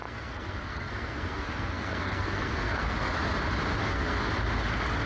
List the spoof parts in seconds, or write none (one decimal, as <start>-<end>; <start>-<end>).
0.0-3.1; 3.8-4.3